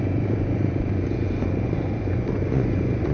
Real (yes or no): no